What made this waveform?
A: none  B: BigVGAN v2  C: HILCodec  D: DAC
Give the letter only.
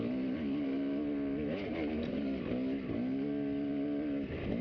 A